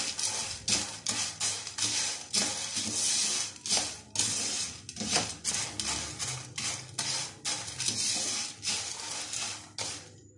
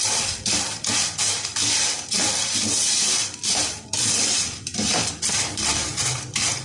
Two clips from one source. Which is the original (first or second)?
first